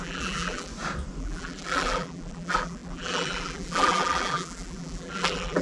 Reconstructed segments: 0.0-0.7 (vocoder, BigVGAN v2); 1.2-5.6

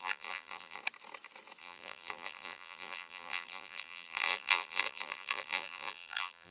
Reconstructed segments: 0.0-0.8 (vocoder, BigVGAN v2); 1.6-6.5

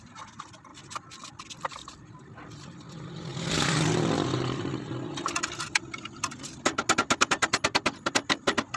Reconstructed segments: 1.8-2.9 (vocoder, BigVGAN v2); 3.3-5.8

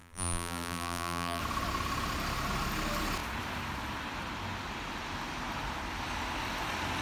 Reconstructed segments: 0.0-1.4 (vocoder, BigVGAN v2)

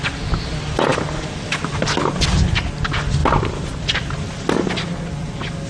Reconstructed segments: none

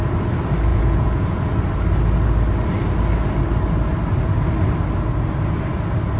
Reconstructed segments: 0.7-1.4 (vocoder, Vocos)